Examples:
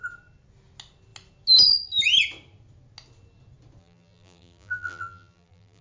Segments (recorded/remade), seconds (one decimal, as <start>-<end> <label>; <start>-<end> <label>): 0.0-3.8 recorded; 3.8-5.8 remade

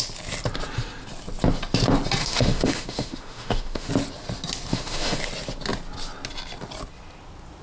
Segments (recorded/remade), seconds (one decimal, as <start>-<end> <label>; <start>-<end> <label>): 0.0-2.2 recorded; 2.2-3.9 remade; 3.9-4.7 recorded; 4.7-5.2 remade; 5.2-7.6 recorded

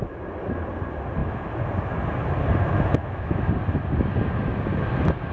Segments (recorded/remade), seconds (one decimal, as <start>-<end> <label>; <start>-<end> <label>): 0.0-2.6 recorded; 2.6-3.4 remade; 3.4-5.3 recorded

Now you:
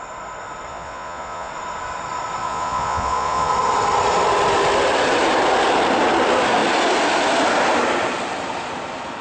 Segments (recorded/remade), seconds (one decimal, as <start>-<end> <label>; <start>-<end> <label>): 0.0-0.7 recorded; 0.7-1.5 remade; 1.5-2.4 recorded; 2.4-3.5 remade; 3.5-9.2 recorded

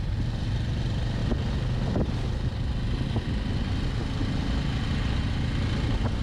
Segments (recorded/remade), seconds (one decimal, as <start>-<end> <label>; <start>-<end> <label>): 0.0-6.2 recorded

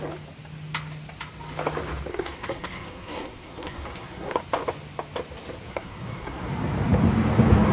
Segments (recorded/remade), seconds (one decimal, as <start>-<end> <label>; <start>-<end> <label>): 0.0-2.1 recorded; 2.1-4.4 remade; 4.4-5.7 recorded; 5.7-6.5 remade; 6.5-7.7 recorded